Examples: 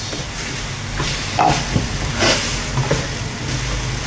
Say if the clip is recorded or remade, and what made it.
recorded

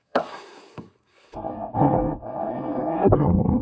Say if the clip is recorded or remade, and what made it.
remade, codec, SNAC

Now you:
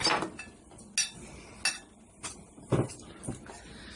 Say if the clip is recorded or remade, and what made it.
recorded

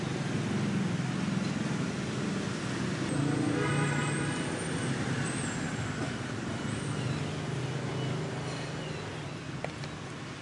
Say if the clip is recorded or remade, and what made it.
recorded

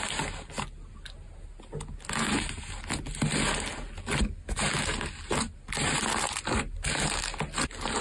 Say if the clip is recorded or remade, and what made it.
recorded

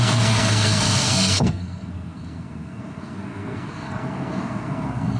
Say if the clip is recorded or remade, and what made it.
remade, codec, SNAC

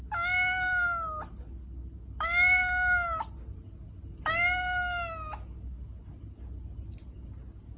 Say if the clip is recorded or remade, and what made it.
recorded